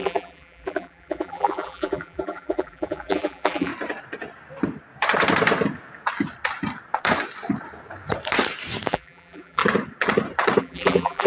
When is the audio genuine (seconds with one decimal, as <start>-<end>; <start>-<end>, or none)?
3.7-8.9; 9.6-10.6